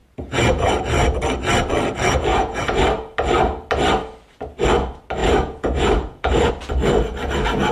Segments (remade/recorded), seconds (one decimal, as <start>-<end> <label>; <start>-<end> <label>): 0.0-0.7 remade; 0.7-2.3 recorded; 2.3-2.8 remade; 2.8-5.2 recorded; 5.2-6.5 remade; 6.5-7.7 recorded

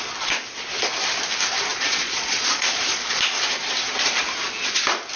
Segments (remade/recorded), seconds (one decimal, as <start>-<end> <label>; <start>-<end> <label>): 0.0-1.7 recorded; 1.7-3.2 remade; 3.2-5.2 recorded

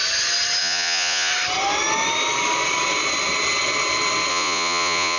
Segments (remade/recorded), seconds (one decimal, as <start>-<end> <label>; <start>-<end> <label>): 0.0-0.6 recorded; 0.6-1.3 remade; 1.3-4.3 recorded; 4.3-5.2 remade

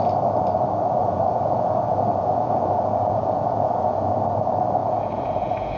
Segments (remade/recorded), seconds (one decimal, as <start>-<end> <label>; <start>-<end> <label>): 0.0-1.0 recorded; 1.0-4.1 remade; 4.1-4.8 recorded; 4.8-5.8 remade

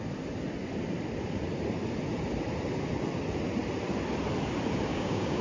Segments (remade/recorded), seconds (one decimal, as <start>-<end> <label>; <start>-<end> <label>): 0.0-4.9 recorded; 4.9-5.4 remade

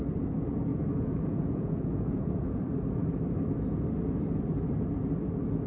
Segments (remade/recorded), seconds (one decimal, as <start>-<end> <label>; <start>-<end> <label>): 0.0-0.7 recorded; 0.7-2.6 remade; 2.6-5.7 recorded

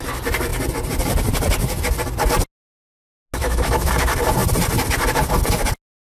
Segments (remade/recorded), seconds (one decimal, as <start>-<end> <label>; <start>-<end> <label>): 0.0-3.4 recorded; 3.4-3.9 remade; 3.9-6.0 recorded

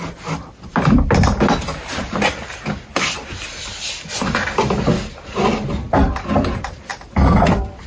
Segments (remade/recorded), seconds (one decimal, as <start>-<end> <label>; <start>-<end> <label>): 0.0-7.9 recorded